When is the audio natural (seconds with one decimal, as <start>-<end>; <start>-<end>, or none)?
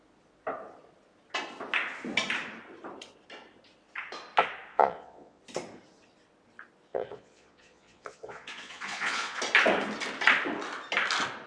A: 0.0-4.7; 5.4-6.9; 9.4-11.5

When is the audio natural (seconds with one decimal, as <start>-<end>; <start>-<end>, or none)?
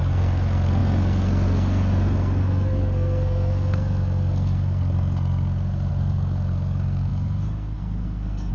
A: none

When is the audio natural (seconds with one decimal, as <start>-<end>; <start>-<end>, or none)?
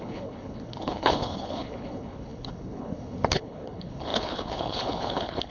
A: none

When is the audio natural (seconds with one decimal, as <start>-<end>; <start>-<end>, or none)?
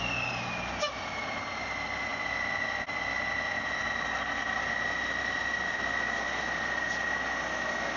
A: 0.0-8.0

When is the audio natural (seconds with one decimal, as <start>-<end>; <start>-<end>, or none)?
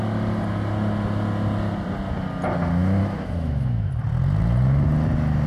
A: 0.0-3.0; 3.9-5.5